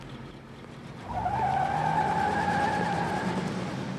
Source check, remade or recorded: recorded